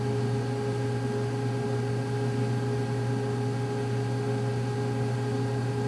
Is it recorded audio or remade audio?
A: recorded